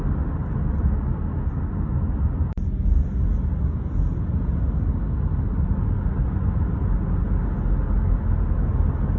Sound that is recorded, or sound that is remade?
recorded